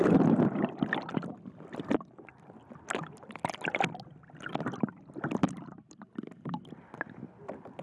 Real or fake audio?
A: real